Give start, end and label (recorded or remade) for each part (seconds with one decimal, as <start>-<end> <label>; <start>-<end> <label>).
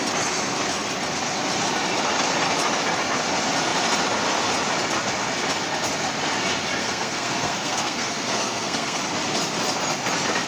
0.0-6.8 recorded; 6.8-9.0 remade; 9.0-10.5 recorded